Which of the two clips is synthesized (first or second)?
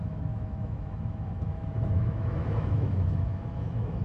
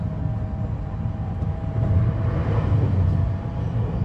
first